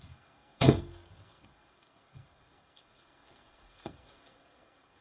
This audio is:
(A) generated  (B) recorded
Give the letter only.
A